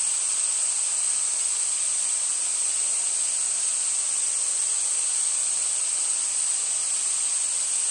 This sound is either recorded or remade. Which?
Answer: recorded